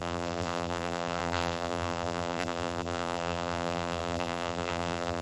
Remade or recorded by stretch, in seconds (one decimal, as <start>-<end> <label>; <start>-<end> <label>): 0.0-5.2 remade

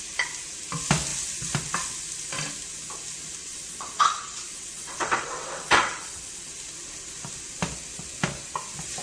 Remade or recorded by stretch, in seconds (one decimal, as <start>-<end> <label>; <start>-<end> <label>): 0.0-3.4 recorded; 3.4-6.5 remade; 6.5-9.0 recorded

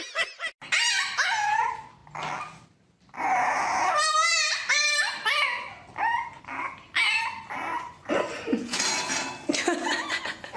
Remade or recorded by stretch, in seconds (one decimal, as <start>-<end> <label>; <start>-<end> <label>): 0.0-7.7 recorded; 7.7-9.1 remade; 9.1-9.8 recorded; 9.8-10.6 remade

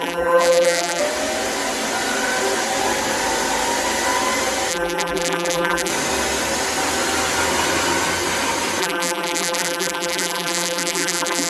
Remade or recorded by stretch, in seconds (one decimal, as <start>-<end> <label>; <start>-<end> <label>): 0.0-1.0 remade; 1.0-4.7 recorded; 4.7-5.9 remade; 5.9-8.8 recorded; 8.8-11.5 remade